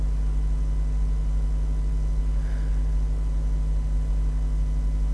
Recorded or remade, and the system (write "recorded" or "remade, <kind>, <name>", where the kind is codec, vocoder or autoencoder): recorded